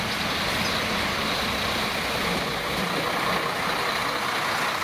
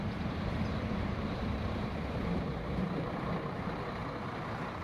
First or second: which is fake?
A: second